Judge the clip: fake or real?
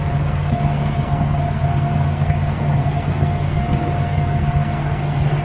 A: fake